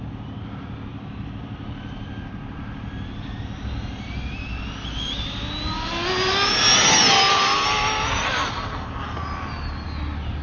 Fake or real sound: real